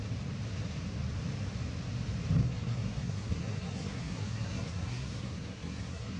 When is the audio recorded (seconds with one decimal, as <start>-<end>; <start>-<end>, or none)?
0.0-2.4